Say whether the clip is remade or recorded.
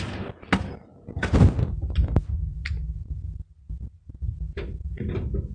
recorded